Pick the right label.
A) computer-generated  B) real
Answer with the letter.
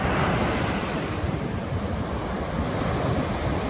B